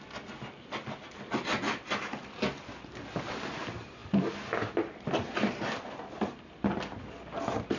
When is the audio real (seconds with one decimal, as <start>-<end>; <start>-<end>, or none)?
0.0-7.8